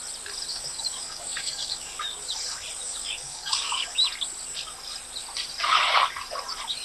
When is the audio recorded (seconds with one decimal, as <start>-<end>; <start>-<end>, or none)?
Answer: 0.0-0.5; 2.0-2.8; 4.0-6.8